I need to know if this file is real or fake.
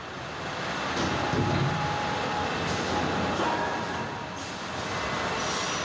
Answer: real